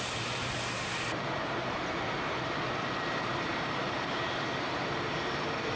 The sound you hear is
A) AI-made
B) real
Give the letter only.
A